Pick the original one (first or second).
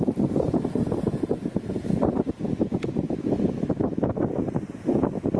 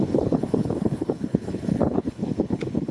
first